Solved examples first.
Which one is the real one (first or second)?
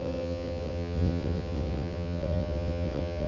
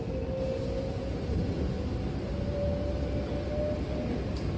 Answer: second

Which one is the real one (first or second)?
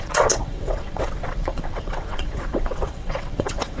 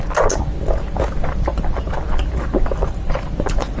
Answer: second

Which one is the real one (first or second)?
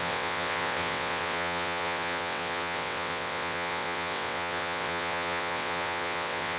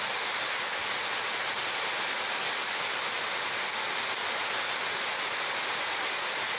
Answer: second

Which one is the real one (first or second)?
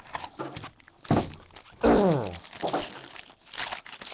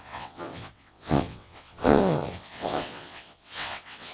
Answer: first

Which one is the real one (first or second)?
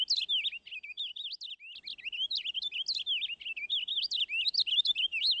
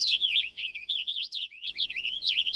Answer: first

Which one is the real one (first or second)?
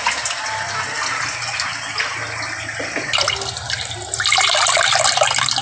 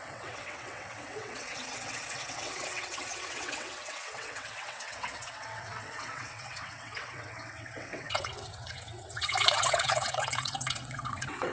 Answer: first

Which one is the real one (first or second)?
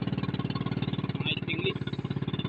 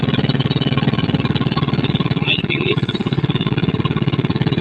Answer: first